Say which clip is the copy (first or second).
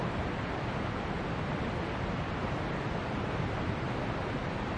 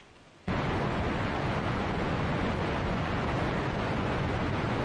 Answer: second